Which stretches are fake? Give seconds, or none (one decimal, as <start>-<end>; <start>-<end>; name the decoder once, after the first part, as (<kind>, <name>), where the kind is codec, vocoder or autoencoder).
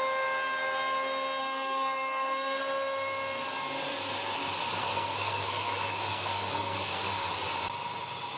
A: 1.4-2.6 (codec, SNAC); 4.8-7.3